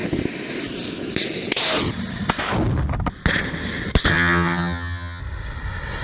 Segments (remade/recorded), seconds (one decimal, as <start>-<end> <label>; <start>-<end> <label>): 0.0-4.1 recorded; 4.1-5.2 remade; 5.2-6.0 recorded